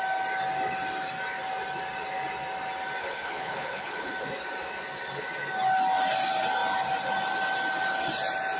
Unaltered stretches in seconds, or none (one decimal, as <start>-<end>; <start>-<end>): 0.0-3.0; 4.1-8.6